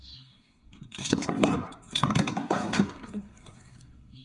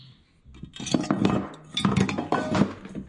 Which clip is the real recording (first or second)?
second